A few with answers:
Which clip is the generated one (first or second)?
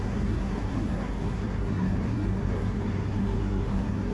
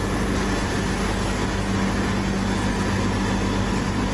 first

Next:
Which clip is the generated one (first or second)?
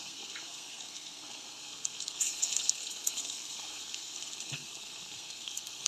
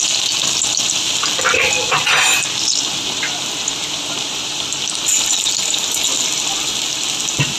first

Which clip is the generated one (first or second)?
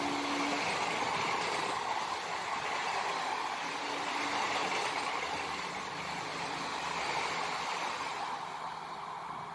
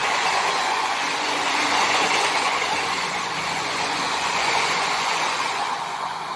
second